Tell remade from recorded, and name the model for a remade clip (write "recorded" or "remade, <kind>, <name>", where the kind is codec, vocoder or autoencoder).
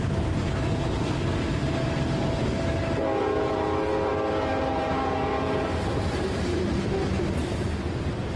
recorded